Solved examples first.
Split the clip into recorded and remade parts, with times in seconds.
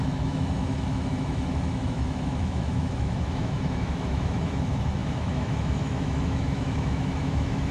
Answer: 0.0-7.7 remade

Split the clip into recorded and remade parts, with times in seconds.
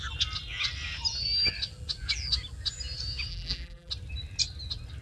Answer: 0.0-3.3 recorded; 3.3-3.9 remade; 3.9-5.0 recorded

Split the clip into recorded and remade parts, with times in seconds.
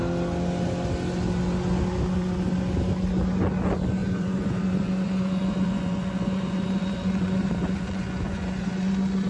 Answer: 0.0-4.0 recorded; 4.0-8.9 remade; 8.9-9.3 recorded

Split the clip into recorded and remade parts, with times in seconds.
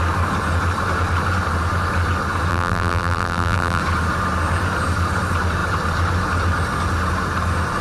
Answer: 0.0-2.5 recorded; 2.5-3.8 remade; 3.8-7.8 recorded